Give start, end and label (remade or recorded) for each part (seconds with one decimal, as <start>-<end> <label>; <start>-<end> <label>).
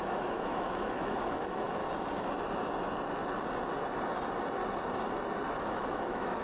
0.0-1.8 remade; 1.8-5.6 recorded; 5.6-6.4 remade